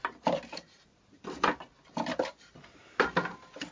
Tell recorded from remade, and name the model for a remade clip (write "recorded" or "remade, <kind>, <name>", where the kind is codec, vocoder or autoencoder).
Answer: recorded